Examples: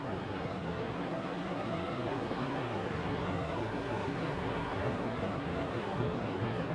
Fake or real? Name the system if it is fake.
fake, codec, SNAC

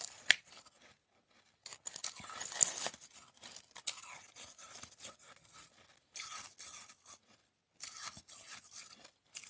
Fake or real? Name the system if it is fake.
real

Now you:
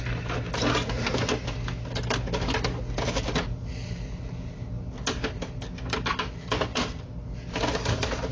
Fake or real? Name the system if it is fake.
real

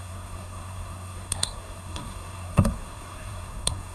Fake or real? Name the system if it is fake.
fake, codec, SNAC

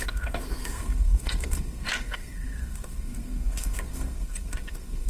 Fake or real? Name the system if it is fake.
fake, codec, SNAC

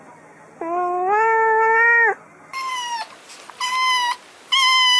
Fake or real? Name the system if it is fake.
real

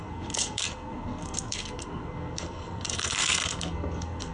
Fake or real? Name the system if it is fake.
fake, codec, SNAC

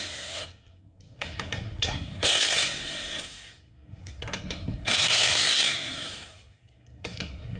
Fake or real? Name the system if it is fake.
fake, codec, SNAC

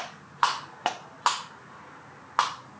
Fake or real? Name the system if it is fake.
real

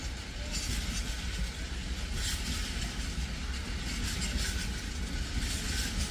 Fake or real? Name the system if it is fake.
real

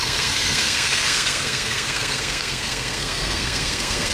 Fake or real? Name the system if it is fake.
fake, codec, SNAC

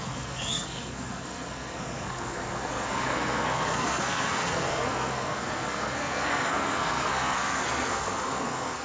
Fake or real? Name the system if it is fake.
fake, codec, SNAC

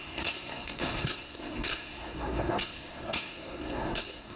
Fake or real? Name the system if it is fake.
fake, codec, SNAC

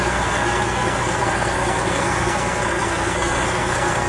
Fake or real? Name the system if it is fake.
fake, codec, SNAC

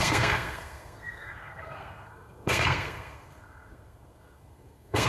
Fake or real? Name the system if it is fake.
fake, codec, SNAC